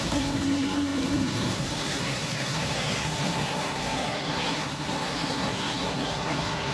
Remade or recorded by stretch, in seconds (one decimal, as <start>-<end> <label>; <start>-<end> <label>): 0.0-6.7 remade